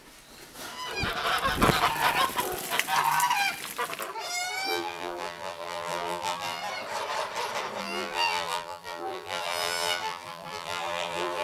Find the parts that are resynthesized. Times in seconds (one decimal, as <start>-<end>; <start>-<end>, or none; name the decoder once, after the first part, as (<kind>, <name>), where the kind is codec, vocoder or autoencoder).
4.7-6.6 (vocoder, BigVGAN v2); 7.8-11.4